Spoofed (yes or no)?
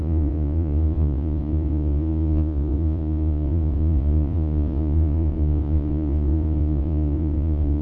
yes